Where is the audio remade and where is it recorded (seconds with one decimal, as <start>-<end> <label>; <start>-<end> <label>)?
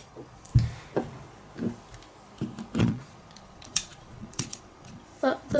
0.0-0.5 remade; 0.5-2.8 recorded; 2.8-5.6 remade